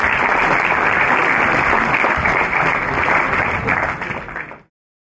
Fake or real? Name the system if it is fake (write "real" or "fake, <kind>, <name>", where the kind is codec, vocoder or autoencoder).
real